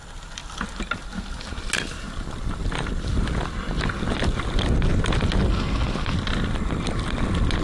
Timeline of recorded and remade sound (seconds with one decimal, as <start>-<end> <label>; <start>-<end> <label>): 0.0-7.6 recorded